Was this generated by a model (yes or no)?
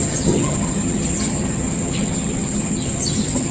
yes